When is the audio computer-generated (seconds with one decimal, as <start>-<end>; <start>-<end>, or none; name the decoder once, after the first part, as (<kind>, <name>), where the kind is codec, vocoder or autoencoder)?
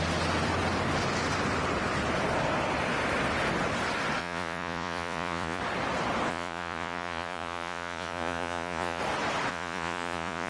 4.2-5.6 (vocoder, Vocos); 6.3-9.0; 9.5-10.5